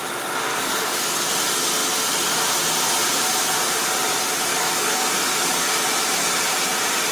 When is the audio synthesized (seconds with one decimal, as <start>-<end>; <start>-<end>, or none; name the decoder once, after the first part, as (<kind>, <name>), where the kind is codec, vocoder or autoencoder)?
0.5-1.3 (codec, DAC); 4.5-5.8